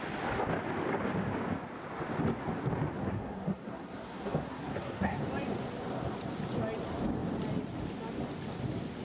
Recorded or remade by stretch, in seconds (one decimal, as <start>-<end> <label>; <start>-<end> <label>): 0.0-3.1 recorded; 3.1-5.2 remade; 5.2-9.0 recorded